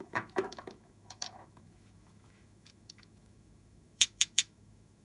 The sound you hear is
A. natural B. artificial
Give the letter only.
B